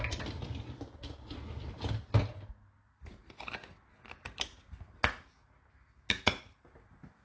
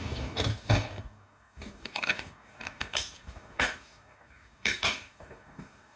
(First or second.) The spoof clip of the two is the second